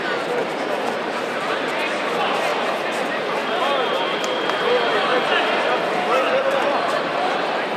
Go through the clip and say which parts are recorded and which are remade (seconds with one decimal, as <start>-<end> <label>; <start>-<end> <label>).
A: 0.0-5.1 recorded; 5.1-6.6 remade; 6.6-7.8 recorded